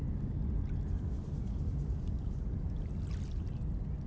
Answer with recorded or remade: recorded